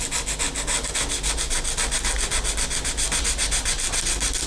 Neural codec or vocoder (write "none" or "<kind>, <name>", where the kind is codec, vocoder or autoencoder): none